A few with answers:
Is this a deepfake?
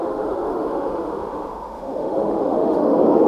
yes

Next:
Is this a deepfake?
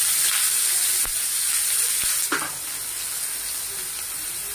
no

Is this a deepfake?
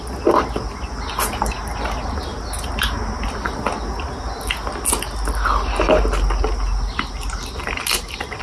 no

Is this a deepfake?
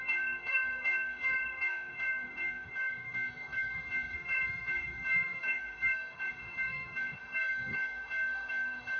yes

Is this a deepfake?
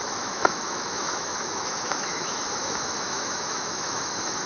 yes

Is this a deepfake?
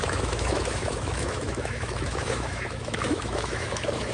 yes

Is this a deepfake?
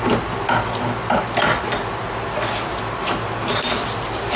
no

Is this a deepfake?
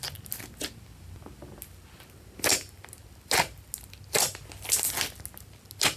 no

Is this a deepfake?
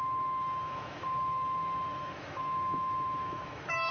yes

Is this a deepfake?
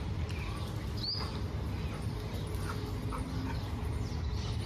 no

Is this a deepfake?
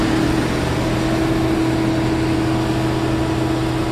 no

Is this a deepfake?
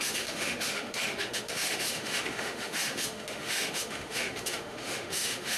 yes